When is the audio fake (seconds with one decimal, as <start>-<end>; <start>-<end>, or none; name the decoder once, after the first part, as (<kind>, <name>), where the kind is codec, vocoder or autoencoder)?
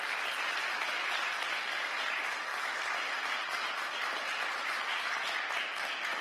none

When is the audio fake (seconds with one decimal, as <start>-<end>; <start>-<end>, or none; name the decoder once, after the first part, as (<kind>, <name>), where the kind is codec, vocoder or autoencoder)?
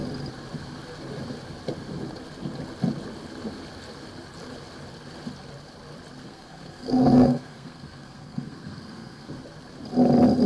6.2-9.3 (codec, SNAC)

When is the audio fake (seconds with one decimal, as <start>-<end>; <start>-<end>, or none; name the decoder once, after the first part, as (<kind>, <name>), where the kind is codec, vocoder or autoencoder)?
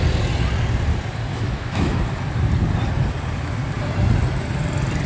1.3-2.0 (autoencoder, DAC-VAE)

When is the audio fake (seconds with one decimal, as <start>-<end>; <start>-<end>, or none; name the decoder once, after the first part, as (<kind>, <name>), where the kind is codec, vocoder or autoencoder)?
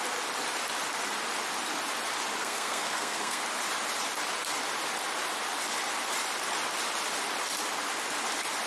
2.4-3.4 (codec, SNAC)